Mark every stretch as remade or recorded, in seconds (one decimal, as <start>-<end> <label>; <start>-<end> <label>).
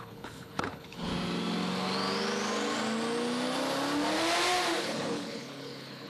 0.0-1.1 remade; 1.1-4.8 recorded; 4.8-6.1 remade